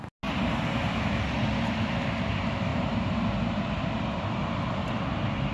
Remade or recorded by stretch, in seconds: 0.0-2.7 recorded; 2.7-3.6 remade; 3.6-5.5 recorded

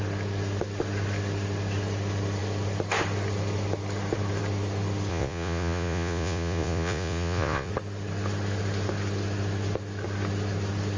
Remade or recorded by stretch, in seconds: 0.0-5.1 recorded; 5.1-7.7 remade; 7.7-11.0 recorded

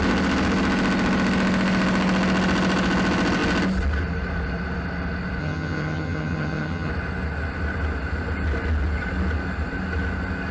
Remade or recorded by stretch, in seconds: 0.0-5.4 recorded; 5.4-6.9 remade; 6.9-10.5 recorded

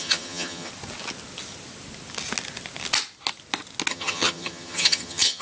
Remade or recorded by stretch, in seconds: 0.0-0.7 remade; 0.7-3.9 recorded; 3.9-5.4 remade